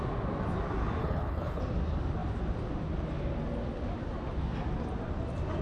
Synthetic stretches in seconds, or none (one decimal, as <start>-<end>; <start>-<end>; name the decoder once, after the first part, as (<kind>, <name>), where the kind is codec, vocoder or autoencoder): 1.0-1.6 (codec, HILCodec)